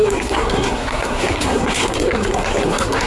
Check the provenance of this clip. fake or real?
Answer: fake